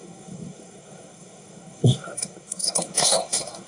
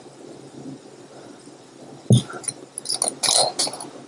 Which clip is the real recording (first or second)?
second